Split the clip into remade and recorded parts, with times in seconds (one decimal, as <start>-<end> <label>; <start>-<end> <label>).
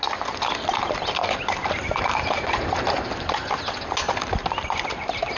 0.0-5.4 recorded